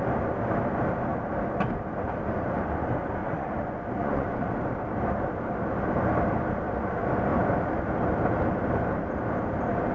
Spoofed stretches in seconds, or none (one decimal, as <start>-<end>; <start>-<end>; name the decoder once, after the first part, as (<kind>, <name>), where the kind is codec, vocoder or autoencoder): 3.2-4.5 (vocoder, Vocos)